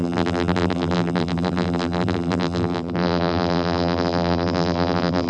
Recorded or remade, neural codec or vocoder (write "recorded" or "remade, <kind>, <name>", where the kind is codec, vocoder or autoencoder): remade, vocoder, BigVGAN v2